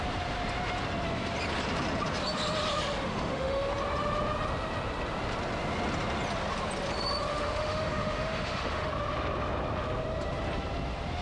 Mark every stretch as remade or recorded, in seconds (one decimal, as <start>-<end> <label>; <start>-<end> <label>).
0.0-3.1 recorded; 3.1-3.7 remade; 3.7-7.3 recorded; 7.3-8.9 remade; 8.9-11.2 recorded